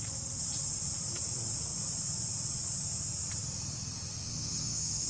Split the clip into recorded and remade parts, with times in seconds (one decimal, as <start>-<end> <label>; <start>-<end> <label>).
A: 0.0-4.2 recorded; 4.2-5.1 remade